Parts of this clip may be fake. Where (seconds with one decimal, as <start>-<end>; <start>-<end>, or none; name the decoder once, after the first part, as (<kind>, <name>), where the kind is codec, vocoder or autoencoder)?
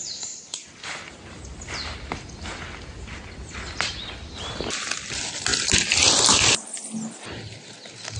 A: none